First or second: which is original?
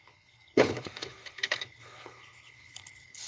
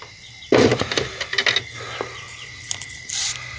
second